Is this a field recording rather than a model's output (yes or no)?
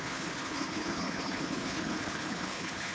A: no